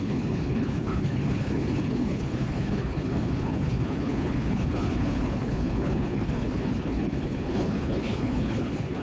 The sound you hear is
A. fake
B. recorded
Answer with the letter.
A